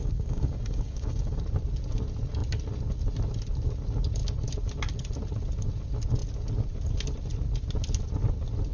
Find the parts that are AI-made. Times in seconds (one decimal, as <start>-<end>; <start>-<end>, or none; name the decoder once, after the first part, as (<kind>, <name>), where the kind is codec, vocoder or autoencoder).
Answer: 0.0-1.4 (codec, DAC)